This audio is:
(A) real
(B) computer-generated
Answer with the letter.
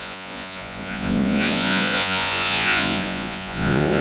B